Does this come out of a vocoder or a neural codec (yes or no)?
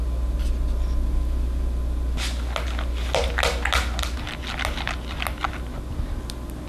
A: no